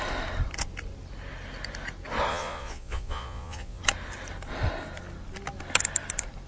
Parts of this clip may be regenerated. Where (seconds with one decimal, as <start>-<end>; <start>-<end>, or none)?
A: 2.3-3.8